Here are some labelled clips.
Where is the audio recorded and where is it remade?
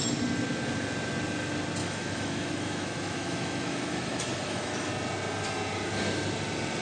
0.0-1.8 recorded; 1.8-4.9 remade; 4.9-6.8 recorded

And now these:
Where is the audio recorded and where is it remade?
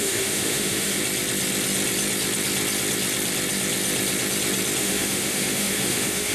0.0-1.0 remade; 1.0-4.8 recorded; 4.8-6.3 remade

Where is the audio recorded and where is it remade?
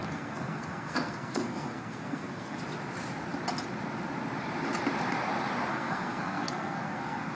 0.0-2.6 remade; 2.6-5.7 recorded; 5.7-7.3 remade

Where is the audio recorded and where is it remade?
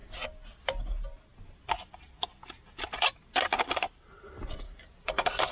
0.0-5.5 recorded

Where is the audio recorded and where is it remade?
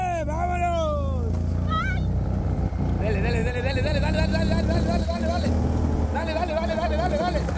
0.0-1.5 recorded; 1.5-3.0 remade; 3.0-3.4 recorded; 3.4-5.5 remade; 5.5-7.6 recorded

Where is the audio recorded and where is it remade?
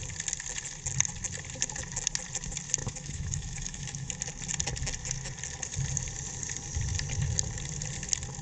0.0-2.8 recorded; 2.8-4.2 remade; 4.2-8.4 recorded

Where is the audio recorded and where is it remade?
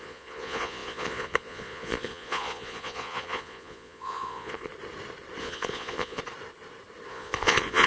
0.0-4.7 remade; 4.7-5.4 recorded; 5.4-6.2 remade; 6.2-7.1 recorded; 7.1-7.9 remade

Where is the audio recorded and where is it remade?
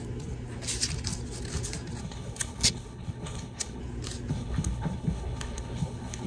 0.0-2.0 recorded; 2.0-3.8 remade; 3.8-4.3 recorded; 4.3-6.3 remade